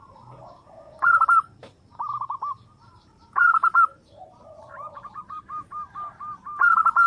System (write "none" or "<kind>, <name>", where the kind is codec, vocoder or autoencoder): vocoder, BigVGAN v2